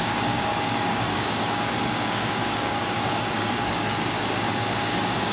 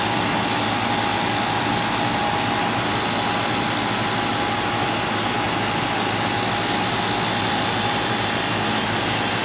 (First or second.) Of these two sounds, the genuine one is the second